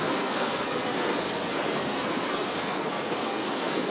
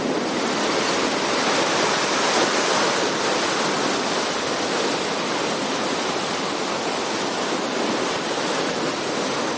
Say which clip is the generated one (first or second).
first